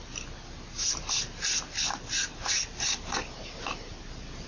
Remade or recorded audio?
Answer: recorded